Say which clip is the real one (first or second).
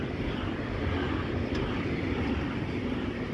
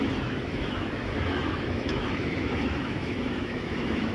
first